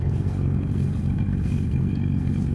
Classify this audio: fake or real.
fake